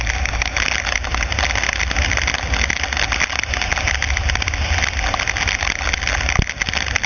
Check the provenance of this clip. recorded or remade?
recorded